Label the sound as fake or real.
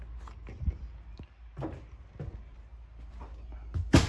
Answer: real